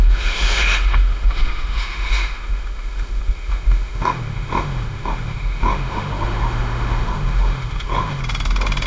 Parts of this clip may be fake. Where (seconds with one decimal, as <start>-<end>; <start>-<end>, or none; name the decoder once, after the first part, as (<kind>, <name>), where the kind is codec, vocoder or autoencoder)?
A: 0.0-8.2 (autoencoder, DAC-VAE)